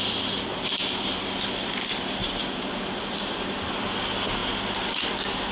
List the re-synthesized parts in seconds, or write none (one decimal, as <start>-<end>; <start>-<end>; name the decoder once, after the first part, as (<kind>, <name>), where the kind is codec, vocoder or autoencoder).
0.5-1.2 (vocoder, BigVGAN v2); 2.2-3.7